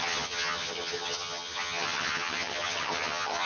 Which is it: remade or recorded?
remade